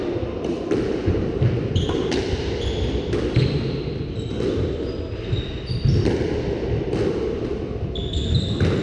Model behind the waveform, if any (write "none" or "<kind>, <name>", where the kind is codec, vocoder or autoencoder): none